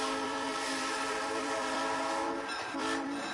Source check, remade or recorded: remade